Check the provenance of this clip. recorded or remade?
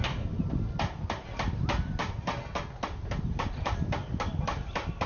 recorded